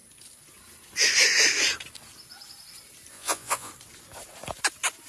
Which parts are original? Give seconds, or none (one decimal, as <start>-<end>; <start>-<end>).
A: 0.0-3.1; 3.7-5.1